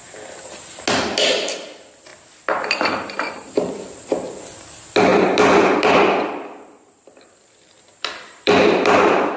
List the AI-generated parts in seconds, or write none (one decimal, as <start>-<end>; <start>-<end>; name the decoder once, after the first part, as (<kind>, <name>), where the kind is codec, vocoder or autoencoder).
2.1-3.7 (vocoder, BigVGAN v2); 5.1-9.4